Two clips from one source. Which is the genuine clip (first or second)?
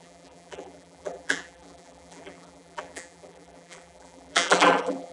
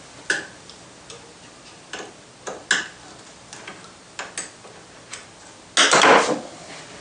second